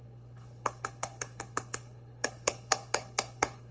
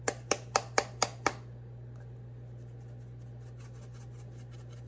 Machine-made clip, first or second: first